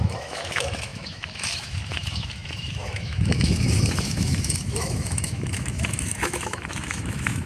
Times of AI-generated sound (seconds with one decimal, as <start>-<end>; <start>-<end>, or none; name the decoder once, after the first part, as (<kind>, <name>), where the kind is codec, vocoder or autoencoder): 0.0-7.5 (autoencoder, DAC-VAE)